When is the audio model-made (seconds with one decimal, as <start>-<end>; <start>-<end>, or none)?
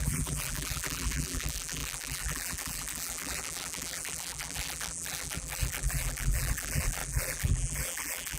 0.0-8.4